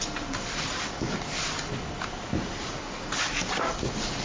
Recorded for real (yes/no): yes